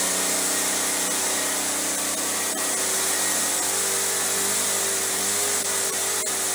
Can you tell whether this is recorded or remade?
recorded